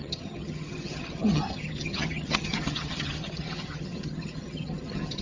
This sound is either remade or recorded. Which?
remade